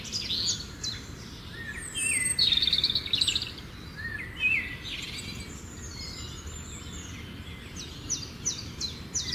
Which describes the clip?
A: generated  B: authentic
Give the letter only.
B